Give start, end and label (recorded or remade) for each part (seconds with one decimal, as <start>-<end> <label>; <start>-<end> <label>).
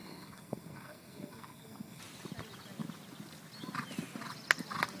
0.0-2.0 remade; 2.0-5.0 recorded